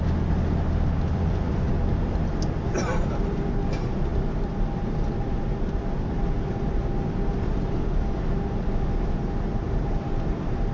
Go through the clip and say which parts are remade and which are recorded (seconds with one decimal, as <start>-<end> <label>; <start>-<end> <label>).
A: 0.0-1.1 recorded; 1.1-1.7 remade; 1.7-10.7 recorded